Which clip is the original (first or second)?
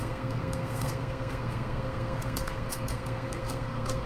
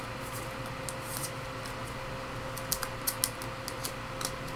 second